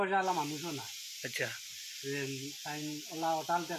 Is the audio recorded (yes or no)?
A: yes